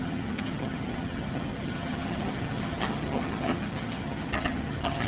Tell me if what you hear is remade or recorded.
remade